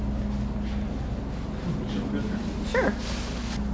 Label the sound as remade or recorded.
recorded